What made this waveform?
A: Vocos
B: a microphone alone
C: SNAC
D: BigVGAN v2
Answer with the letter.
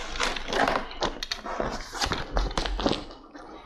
B